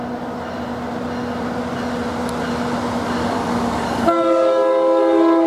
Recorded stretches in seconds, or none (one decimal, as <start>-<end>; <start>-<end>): 0.0-3.2